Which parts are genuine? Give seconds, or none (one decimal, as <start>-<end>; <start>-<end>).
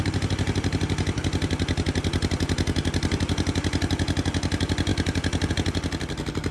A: 0.0-6.5